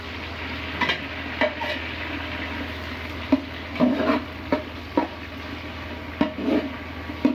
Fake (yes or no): no